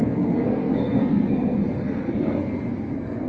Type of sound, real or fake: fake